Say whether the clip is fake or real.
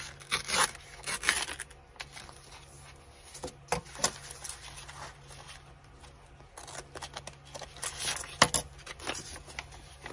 real